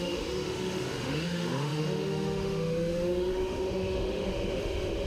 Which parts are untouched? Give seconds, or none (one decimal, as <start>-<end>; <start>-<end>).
none

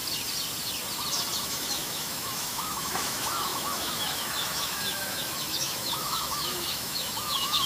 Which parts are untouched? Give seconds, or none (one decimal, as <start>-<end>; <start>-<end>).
0.0-1.4

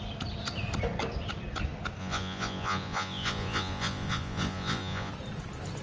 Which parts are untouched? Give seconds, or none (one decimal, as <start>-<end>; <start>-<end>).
0.0-2.0; 5.1-5.8